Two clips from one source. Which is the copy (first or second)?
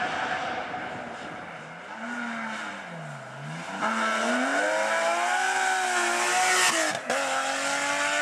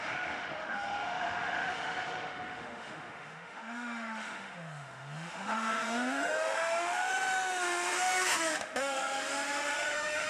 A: second